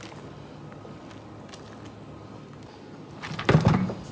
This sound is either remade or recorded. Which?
recorded